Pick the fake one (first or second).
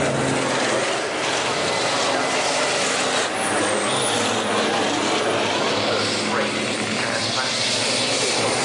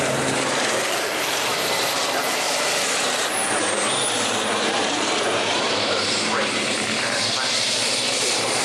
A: second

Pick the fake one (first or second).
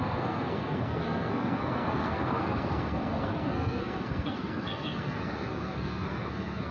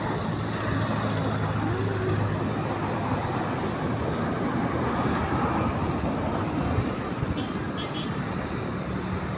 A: first